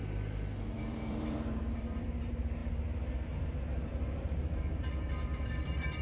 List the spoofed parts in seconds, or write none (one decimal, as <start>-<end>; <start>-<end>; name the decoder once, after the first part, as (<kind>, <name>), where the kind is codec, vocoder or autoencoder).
0.8-6.0 (vocoder, BigVGAN v2)